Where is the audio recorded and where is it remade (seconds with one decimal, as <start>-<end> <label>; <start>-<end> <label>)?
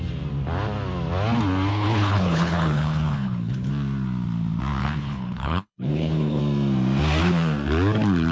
0.0-1.7 recorded; 1.7-3.7 remade; 3.7-4.8 recorded; 4.8-6.4 remade; 6.4-8.3 recorded